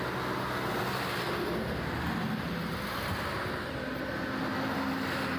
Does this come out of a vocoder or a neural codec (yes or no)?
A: no